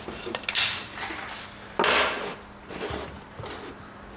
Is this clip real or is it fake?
real